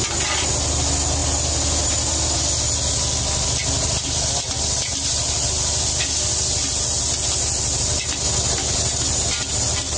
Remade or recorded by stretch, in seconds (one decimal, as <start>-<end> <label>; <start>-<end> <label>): 0.0-10.0 recorded